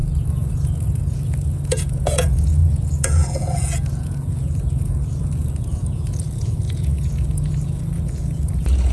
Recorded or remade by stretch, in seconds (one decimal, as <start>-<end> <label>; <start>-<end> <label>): 0.0-8.9 remade